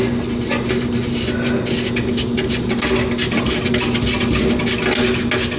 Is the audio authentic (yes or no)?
yes